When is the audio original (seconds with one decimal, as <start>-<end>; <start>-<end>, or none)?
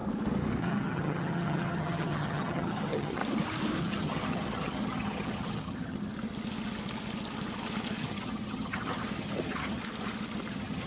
0.0-0.6; 3.2-3.8; 6.1-8.0; 9.8-10.5